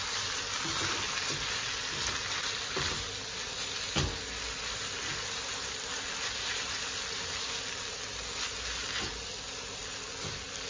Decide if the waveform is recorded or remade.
recorded